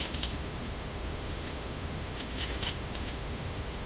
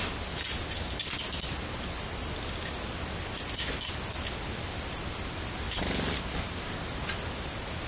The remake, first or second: first